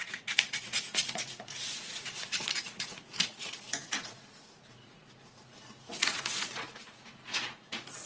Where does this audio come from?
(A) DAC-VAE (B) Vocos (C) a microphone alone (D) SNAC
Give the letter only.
B